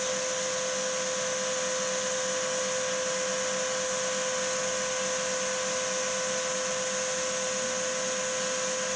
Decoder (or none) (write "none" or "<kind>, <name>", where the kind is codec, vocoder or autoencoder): none